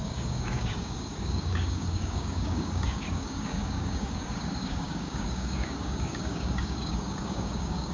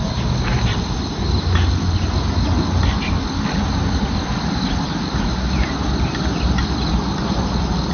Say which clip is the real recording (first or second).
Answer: second